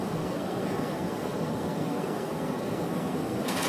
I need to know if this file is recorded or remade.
remade